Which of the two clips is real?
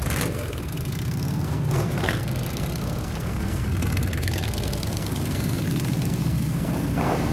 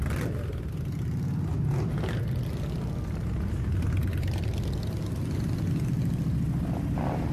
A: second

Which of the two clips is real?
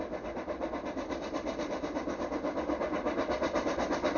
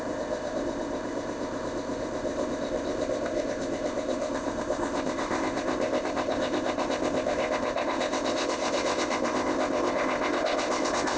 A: first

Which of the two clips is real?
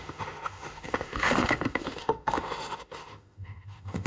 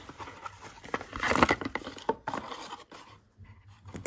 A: second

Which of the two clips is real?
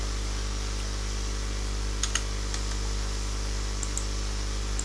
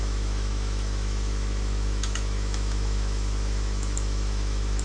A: first